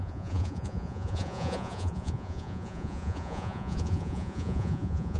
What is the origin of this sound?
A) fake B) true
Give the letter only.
A